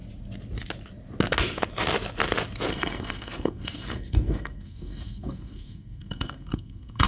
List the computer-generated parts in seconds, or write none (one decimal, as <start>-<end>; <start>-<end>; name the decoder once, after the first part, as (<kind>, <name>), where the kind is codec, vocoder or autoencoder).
2.7-7.1 (codec, SNAC)